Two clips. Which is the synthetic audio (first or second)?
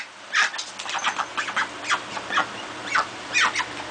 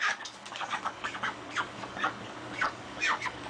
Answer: second